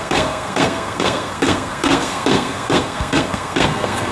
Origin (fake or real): fake